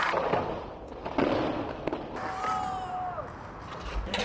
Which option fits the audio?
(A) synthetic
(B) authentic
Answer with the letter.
B